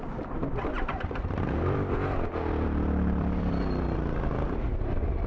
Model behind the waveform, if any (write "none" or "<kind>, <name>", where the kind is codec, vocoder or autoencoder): vocoder, BigVGAN v2